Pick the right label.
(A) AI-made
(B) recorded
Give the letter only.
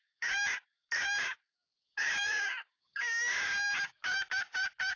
A